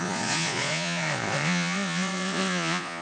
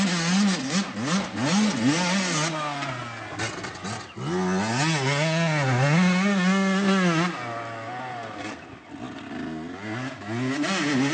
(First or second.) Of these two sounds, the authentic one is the second